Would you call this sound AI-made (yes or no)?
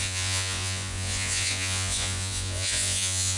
yes